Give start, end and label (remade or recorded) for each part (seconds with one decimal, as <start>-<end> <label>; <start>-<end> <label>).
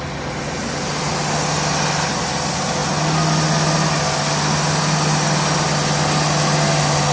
0.0-7.1 recorded